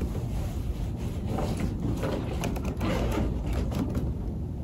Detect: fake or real real